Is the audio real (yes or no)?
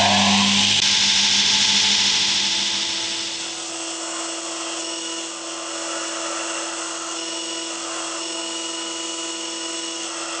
yes